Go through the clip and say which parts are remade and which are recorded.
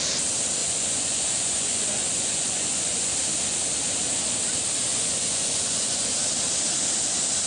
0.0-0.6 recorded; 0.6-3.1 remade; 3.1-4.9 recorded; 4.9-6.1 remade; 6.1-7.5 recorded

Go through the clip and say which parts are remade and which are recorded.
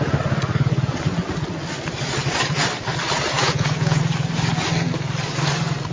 0.0-3.4 recorded; 3.4-4.0 remade; 4.0-5.9 recorded